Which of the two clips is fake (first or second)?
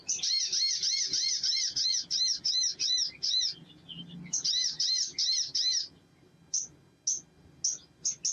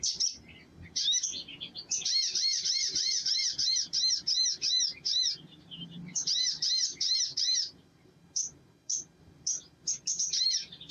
second